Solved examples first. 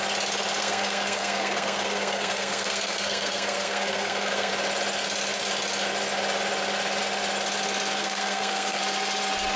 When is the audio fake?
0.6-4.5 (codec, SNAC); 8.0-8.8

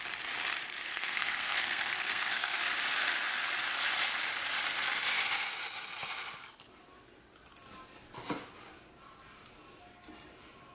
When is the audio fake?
0.9-2.6 (codec, SNAC)